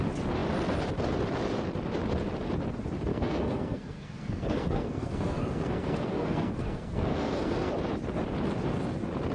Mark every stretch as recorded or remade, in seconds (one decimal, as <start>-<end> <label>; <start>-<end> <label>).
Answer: 0.0-3.1 recorded; 3.1-7.7 remade; 7.7-9.3 recorded